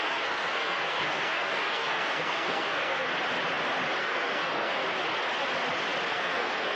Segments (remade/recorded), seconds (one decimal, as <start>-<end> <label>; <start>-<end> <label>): 0.0-3.1 remade; 3.1-4.0 recorded; 4.0-4.8 remade; 4.8-6.1 recorded; 6.1-6.8 remade